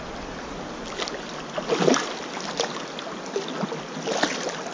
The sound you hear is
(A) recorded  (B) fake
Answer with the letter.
A